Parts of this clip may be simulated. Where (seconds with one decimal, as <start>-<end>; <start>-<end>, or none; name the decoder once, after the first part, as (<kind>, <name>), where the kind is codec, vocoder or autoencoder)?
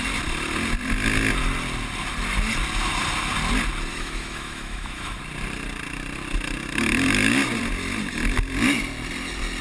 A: 3.9-5.2 (autoencoder, DAC-VAE)